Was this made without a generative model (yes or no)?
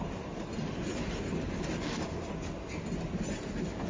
yes